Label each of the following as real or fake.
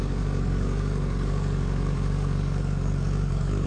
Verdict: fake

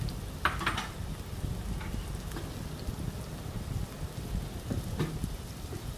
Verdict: real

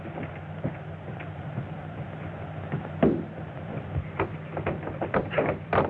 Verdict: fake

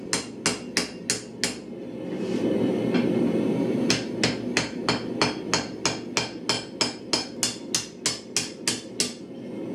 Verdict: real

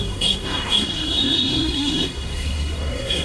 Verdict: fake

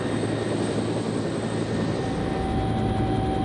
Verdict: real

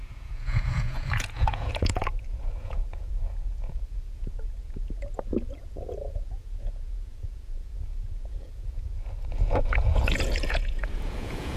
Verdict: fake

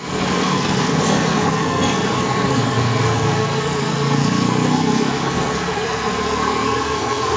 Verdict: fake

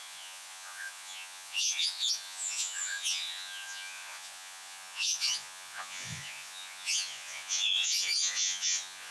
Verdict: fake